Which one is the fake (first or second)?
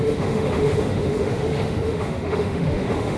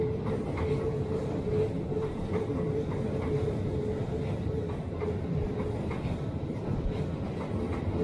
first